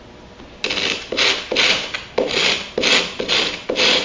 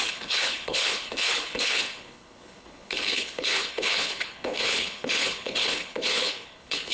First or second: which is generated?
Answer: second